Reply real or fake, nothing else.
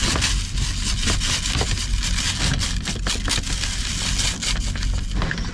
real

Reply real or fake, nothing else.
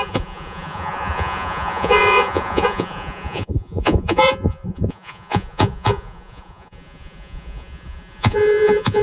fake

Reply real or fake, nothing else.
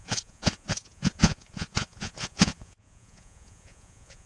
fake